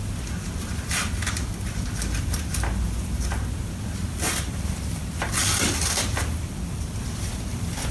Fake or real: fake